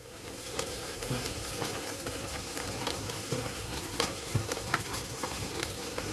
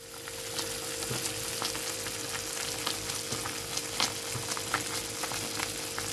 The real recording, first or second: second